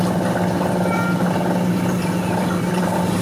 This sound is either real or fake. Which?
real